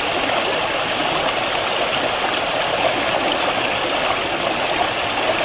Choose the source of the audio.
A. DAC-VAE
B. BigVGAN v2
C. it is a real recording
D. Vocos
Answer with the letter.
C